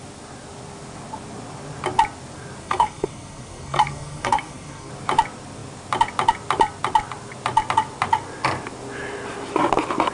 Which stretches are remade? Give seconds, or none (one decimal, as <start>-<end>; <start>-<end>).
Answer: 2.6-4.9